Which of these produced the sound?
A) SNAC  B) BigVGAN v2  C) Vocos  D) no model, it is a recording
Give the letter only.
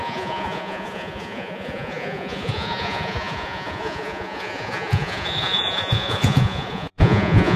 C